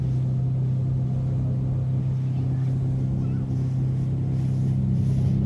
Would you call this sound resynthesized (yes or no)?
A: no